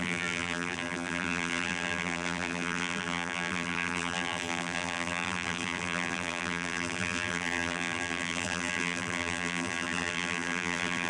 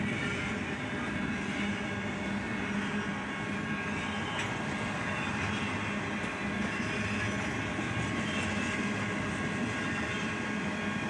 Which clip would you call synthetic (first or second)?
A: first